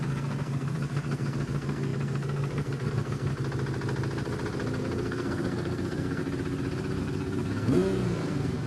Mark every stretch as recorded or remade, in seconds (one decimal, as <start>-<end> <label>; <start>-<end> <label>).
0.0-3.3 remade; 3.3-4.8 recorded; 4.8-6.2 remade; 6.2-7.0 recorded; 7.0-8.7 remade